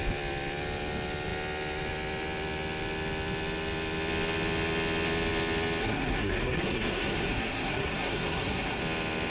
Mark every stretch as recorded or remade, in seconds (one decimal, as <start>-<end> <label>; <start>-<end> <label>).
0.0-5.8 recorded; 5.8-8.8 remade; 8.8-9.3 recorded